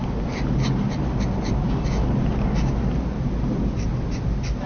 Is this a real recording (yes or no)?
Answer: yes